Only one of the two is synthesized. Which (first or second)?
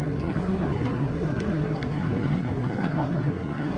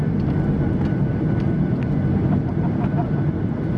first